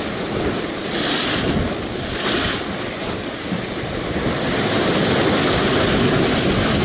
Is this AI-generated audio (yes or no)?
yes